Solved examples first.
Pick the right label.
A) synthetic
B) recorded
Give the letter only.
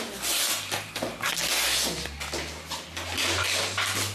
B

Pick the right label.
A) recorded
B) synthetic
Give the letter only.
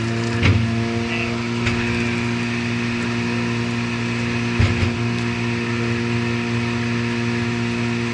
A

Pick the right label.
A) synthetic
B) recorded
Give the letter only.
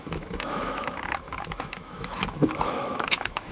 A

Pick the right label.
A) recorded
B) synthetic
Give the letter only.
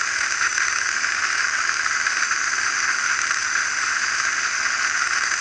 B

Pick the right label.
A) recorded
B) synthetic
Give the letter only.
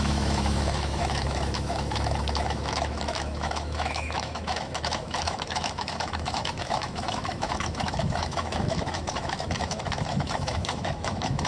B